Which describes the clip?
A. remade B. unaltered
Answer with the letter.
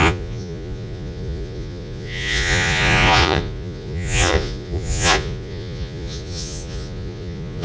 A